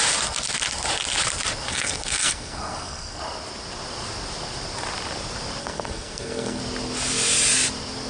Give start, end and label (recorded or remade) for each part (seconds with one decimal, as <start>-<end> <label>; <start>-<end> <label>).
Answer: 0.0-1.7 recorded; 1.7-3.2 remade; 3.2-5.6 recorded; 5.6-6.6 remade; 6.6-8.1 recorded